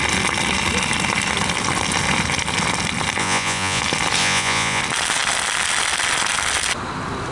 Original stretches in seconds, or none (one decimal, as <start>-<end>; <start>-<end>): 0.0-3.2; 3.8-4.2; 4.8-7.3